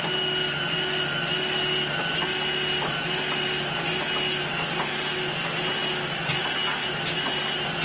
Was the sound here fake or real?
real